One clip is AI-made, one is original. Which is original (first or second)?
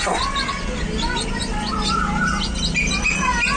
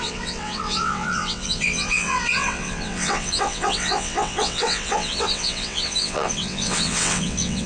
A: first